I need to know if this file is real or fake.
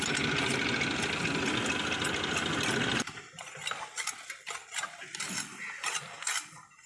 real